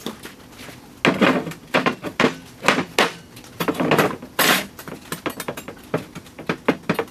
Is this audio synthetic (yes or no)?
no